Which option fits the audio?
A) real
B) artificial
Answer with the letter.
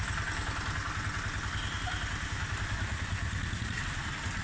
A